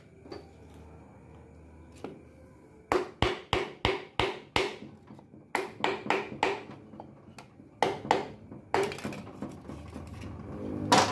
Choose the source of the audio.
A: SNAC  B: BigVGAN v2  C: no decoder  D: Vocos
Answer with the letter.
C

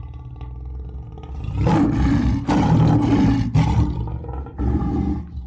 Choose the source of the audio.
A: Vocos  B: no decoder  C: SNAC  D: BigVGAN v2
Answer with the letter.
B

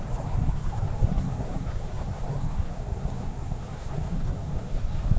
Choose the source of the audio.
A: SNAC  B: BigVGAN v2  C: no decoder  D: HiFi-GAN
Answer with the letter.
A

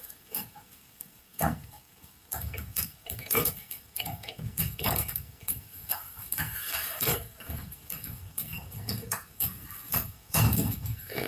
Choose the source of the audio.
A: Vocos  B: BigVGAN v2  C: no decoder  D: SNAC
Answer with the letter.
D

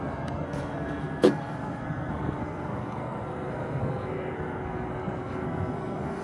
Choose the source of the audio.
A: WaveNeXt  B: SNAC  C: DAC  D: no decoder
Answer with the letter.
B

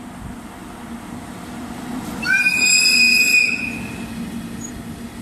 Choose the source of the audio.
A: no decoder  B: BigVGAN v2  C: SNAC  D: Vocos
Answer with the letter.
A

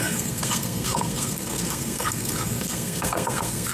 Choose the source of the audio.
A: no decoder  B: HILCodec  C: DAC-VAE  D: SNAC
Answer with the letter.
D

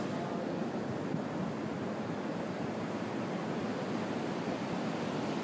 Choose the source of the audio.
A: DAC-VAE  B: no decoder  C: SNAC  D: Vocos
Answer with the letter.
B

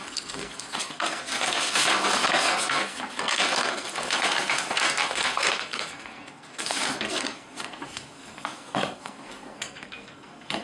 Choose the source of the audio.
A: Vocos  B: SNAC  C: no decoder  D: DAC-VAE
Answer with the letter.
B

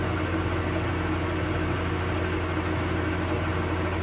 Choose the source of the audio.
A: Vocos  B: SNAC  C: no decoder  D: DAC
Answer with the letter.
C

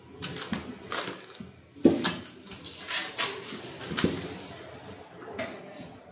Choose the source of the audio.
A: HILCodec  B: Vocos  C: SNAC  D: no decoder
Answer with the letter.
D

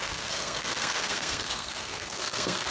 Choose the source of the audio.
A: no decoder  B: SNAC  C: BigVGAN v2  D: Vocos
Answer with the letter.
B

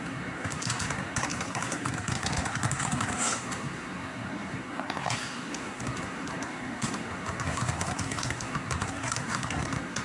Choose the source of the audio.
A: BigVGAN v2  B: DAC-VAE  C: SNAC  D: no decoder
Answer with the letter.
C